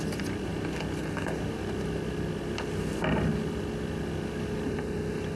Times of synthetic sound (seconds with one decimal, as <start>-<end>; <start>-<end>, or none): none